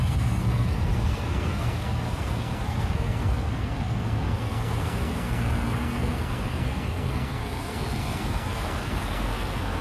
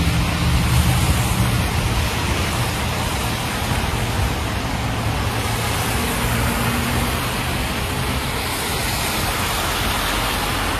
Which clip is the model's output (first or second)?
first